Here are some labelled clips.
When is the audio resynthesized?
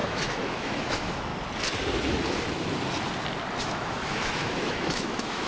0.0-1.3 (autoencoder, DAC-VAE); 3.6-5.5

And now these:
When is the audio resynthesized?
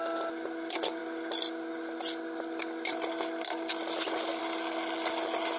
none